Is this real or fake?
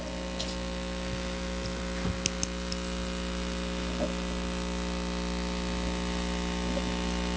real